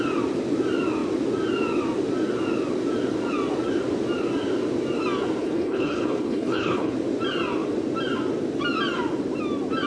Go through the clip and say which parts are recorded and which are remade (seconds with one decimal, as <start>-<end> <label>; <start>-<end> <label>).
0.0-5.4 recorded; 5.4-6.9 remade; 6.9-9.9 recorded